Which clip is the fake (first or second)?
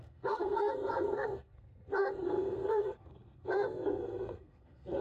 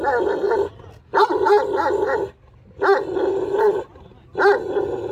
first